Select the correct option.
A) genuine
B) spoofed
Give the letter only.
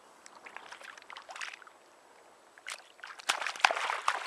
A